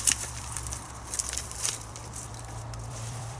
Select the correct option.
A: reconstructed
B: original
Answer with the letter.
A